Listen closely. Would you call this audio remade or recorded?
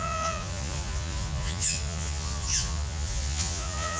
remade